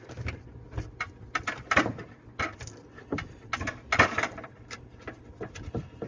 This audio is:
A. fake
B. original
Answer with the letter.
B